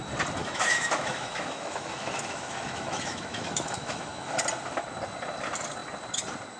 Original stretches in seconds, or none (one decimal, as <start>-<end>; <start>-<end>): 0.0-0.4; 4.4-6.6